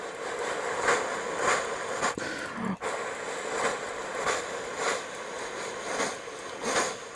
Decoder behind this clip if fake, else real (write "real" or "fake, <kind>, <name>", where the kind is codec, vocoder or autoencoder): real